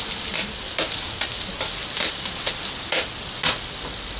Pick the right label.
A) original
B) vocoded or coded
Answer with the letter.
A